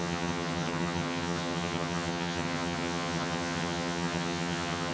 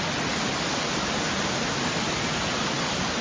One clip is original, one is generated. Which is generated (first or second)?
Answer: first